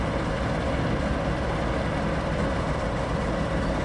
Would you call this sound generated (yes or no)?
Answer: no